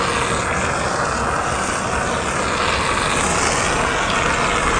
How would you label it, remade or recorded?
recorded